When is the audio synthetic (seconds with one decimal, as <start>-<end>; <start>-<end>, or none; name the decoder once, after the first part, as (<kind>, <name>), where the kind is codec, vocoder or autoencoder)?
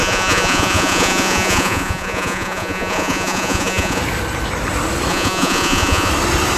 0.0-4.0 (vocoder, Vocos); 5.1-6.1